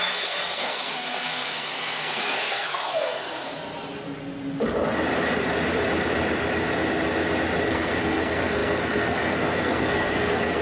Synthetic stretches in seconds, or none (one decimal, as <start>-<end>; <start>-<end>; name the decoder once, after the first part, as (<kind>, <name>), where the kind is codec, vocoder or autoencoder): 0.0-3.5 (codec, SNAC); 7.7-10.6